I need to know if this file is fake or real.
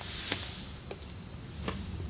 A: real